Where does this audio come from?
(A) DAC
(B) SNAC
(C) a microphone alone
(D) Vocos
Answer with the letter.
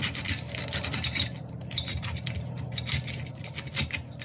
C